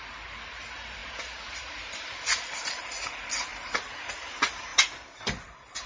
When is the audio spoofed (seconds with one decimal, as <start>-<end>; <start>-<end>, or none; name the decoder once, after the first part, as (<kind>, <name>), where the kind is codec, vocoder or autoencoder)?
none